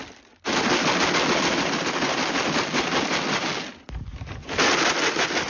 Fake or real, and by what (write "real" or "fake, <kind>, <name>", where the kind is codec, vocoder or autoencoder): real